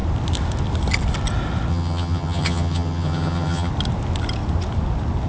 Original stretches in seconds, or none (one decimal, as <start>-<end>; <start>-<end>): 0.0-1.7; 3.7-5.3